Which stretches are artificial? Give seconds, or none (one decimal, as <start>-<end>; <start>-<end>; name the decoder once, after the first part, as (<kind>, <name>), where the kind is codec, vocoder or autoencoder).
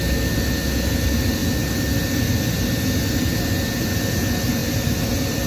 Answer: none